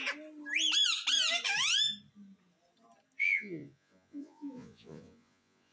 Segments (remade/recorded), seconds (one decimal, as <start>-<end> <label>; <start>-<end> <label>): 0.0-3.2 recorded; 3.2-5.7 remade

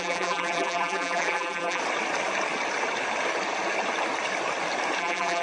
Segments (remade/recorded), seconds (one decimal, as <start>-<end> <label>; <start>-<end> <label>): 0.0-1.8 remade; 1.8-5.0 recorded; 5.0-5.4 remade

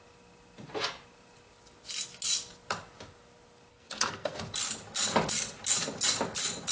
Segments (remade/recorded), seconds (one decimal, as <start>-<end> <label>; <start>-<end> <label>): 0.0-3.7 recorded; 3.7-4.4 remade; 4.4-6.7 recorded